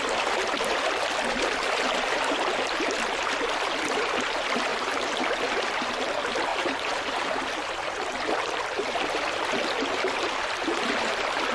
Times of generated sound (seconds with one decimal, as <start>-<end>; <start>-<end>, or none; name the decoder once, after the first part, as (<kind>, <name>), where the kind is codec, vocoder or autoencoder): 4.7-5.4 (vocoder, BigVGAN v2); 6.5-7.4